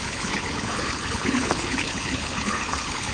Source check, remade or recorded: remade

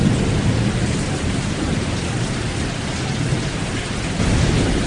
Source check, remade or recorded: recorded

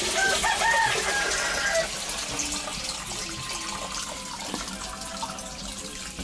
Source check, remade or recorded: recorded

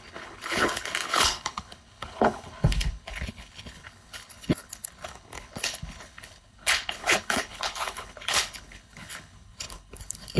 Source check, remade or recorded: remade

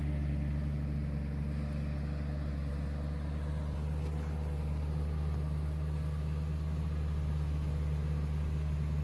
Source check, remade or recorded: recorded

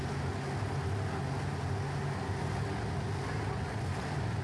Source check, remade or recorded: recorded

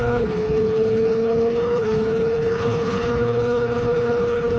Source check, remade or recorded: remade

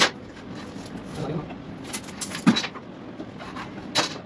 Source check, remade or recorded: recorded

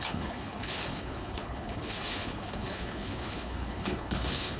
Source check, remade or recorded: remade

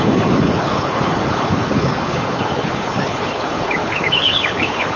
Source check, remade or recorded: remade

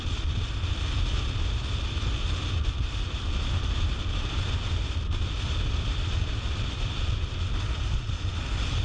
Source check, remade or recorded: recorded